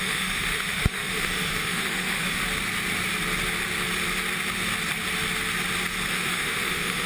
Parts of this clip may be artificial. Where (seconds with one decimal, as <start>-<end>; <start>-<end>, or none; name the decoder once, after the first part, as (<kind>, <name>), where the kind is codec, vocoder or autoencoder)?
0.0-2.4 (autoencoder, DAC-VAE); 6.1-7.1